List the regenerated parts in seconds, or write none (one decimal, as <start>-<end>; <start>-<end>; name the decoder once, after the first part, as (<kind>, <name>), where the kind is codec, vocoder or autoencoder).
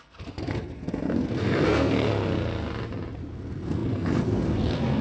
0.0-2.1 (codec, SNAC); 3.3-5.0